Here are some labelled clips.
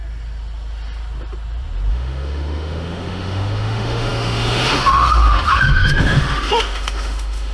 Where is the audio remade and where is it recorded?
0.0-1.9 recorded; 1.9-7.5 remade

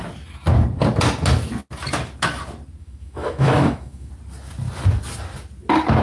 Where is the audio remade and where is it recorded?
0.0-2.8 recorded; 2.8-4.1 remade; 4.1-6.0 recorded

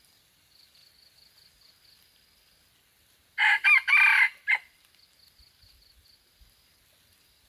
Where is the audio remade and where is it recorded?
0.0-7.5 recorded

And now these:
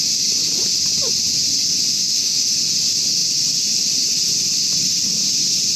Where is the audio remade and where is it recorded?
0.0-1.9 recorded; 1.9-2.5 remade; 2.5-5.8 recorded

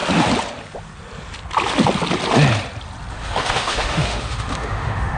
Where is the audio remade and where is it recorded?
0.0-3.1 recorded; 3.1-5.2 remade

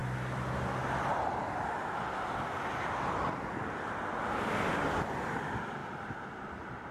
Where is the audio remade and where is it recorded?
0.0-6.9 recorded

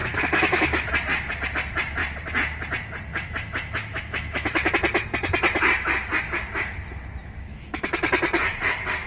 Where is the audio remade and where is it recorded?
0.0-0.9 remade; 0.9-3.1 recorded; 3.1-4.7 remade; 4.7-7.2 recorded; 7.2-8.1 remade; 8.1-9.1 recorded